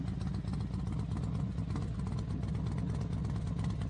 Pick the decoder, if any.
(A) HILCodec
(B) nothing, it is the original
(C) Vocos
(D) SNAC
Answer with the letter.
B